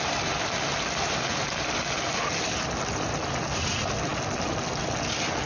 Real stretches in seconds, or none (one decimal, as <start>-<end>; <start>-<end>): 0.0-5.5